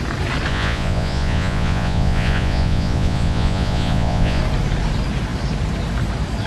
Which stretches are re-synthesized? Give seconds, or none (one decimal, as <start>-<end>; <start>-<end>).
0.5-4.4

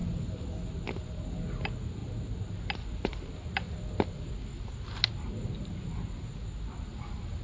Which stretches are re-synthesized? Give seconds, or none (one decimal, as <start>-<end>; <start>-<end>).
none